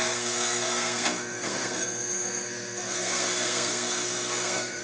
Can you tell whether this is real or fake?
fake